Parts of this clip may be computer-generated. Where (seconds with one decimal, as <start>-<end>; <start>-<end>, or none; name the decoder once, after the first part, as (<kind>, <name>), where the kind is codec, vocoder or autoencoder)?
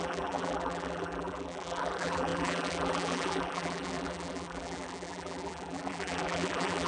0.0-6.9 (vocoder, BigVGAN v2)